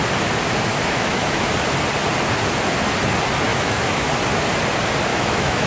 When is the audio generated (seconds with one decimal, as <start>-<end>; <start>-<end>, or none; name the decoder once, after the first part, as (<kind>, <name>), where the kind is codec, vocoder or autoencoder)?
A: 0.7-1.5 (autoencoder, DAC-VAE); 3.5-4.1; 5.1-5.7